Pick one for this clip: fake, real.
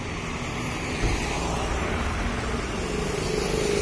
real